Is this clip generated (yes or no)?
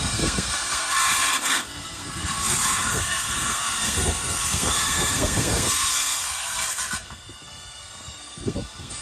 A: yes